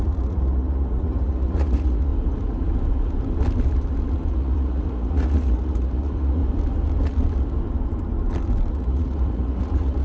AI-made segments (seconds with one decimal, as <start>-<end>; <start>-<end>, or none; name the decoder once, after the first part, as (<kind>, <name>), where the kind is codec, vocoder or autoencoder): 0.0-2.1 (vocoder, Vocos); 4.3-6.4; 8.7-10.0